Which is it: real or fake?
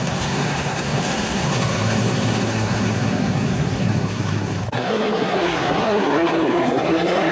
fake